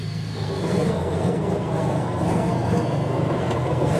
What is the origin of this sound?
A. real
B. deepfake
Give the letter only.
B